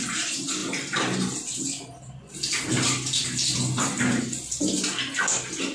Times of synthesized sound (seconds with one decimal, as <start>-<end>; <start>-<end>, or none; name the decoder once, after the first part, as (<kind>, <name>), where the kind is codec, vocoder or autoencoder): none